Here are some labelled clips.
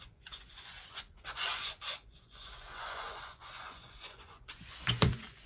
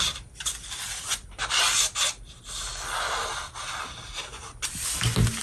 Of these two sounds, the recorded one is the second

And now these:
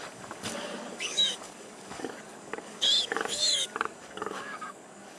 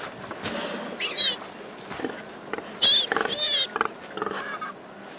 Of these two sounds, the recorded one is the second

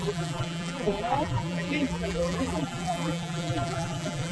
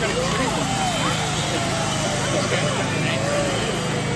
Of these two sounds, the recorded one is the second